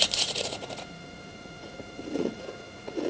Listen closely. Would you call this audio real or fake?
fake